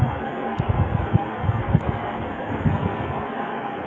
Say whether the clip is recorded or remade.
remade